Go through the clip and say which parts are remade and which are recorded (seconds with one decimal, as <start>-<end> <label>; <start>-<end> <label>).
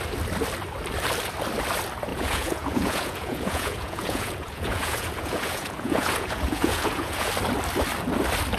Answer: 0.0-2.1 recorded; 2.1-7.3 remade; 7.3-8.6 recorded